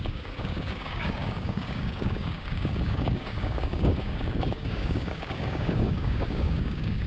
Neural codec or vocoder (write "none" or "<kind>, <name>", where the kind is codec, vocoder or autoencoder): codec, DAC